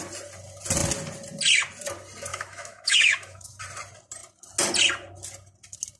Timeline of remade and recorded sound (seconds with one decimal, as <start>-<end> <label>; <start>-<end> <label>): 0.0-2.3 recorded; 2.3-3.6 remade; 3.6-6.0 recorded